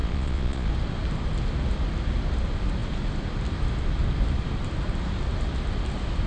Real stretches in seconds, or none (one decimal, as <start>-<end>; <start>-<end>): 0.7-6.3

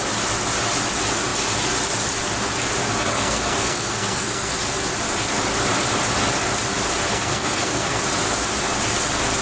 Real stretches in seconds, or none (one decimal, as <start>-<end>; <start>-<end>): 0.0-3.1; 4.5-7.1; 8.0-9.4

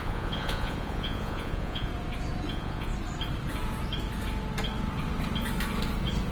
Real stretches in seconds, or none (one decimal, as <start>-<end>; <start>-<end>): 1.9-2.5; 2.9-6.3

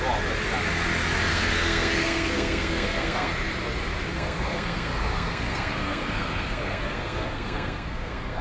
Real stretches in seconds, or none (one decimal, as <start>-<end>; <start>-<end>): 0.0-1.3; 3.3-4.1

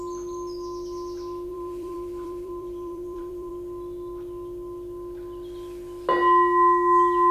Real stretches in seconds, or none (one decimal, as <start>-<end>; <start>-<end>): 0.0-1.5; 3.5-7.3

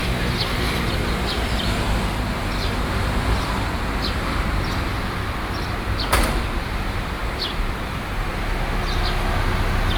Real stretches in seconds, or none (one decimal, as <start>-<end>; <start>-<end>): 4.7-7.2; 8.3-10.0

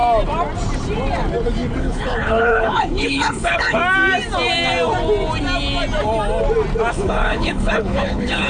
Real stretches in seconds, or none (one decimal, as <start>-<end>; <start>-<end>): 0.0-1.8; 3.8-6.9